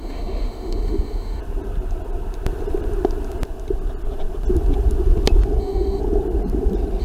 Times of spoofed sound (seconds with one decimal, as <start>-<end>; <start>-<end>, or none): 0.0-1.4; 5.6-6.0